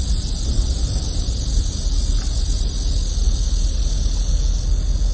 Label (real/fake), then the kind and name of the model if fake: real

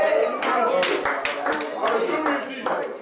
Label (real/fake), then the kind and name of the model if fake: real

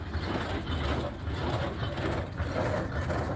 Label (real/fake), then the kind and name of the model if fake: real